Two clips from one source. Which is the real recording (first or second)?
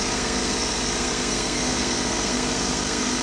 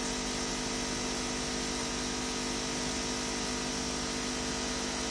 second